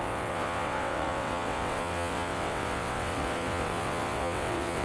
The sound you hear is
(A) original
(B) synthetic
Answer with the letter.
B